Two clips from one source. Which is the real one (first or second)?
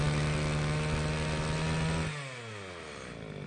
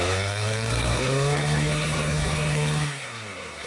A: first